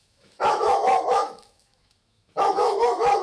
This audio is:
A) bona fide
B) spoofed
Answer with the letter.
B